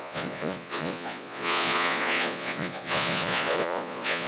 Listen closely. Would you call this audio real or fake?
fake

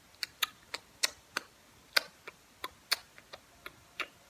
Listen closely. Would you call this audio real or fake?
real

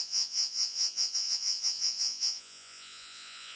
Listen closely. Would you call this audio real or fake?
fake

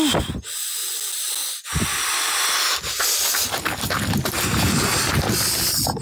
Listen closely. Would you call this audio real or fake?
real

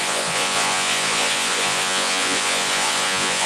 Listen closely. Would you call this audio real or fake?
fake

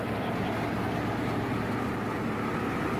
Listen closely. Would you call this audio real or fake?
real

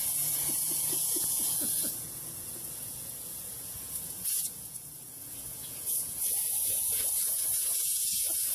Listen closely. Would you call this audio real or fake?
fake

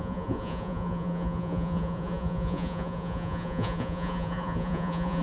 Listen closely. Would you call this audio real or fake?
fake